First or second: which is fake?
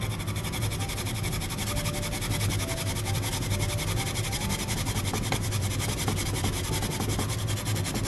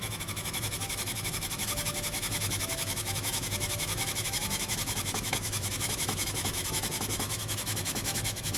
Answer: second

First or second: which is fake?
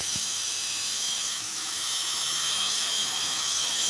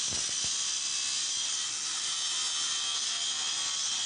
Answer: first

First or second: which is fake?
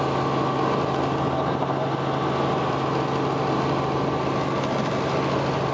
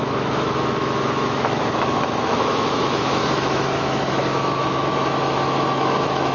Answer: second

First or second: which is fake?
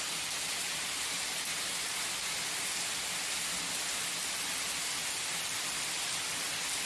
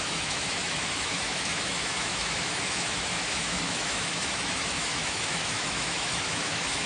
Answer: second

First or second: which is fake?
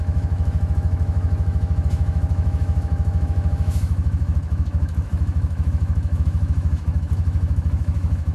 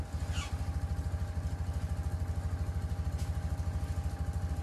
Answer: first